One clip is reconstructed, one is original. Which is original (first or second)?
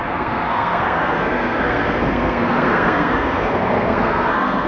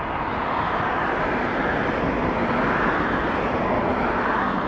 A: second